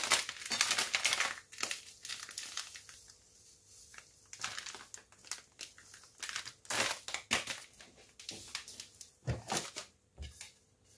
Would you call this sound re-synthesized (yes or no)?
no